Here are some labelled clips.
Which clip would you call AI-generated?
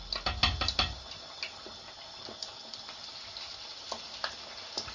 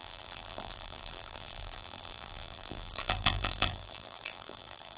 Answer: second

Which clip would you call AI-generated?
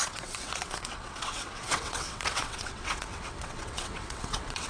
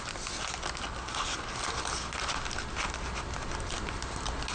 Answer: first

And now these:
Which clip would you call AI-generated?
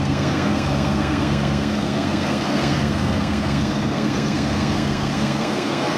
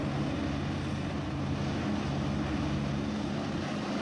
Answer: first